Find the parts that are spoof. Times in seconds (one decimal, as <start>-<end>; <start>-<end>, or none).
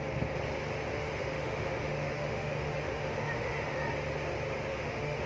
0.9-3.9; 4.7-5.3